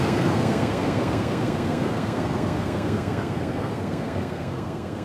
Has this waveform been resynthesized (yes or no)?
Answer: yes